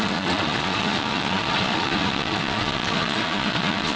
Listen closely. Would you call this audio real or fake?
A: fake